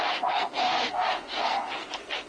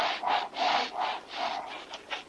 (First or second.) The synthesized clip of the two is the first